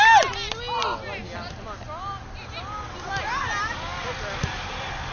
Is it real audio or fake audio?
real